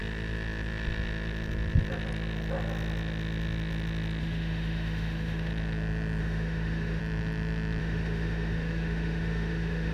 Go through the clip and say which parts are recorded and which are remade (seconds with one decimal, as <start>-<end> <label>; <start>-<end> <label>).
0.0-4.2 recorded; 4.2-5.5 remade; 5.5-6.2 recorded; 6.2-7.0 remade; 7.0-7.8 recorded; 7.8-9.9 remade